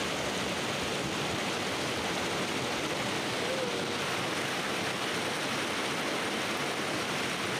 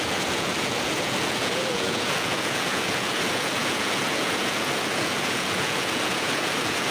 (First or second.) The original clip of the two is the first